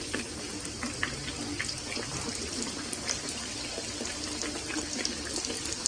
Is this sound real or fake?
real